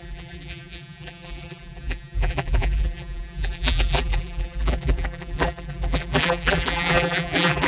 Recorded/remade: remade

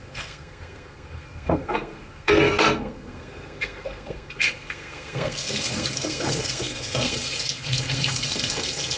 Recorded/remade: remade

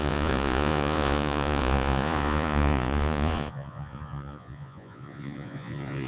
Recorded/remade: remade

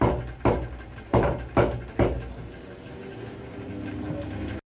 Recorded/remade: recorded